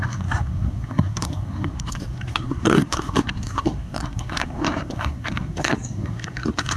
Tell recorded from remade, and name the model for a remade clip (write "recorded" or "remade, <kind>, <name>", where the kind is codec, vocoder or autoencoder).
remade, codec, SNAC